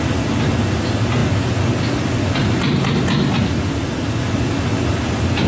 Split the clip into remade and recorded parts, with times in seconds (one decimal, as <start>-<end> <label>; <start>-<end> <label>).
0.0-5.5 recorded